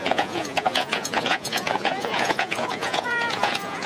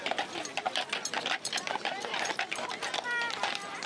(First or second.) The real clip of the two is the second